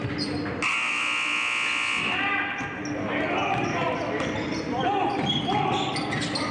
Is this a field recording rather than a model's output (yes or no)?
yes